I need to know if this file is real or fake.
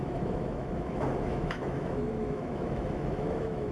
fake